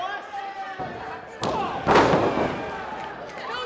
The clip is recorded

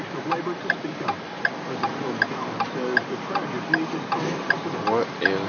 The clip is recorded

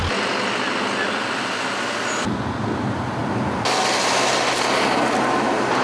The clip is recorded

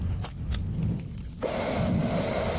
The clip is recorded